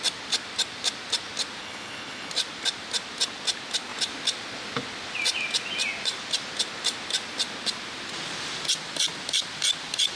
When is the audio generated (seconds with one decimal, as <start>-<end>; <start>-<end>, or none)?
1.6-2.3